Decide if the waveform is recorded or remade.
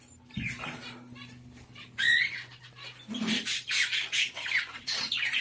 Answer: remade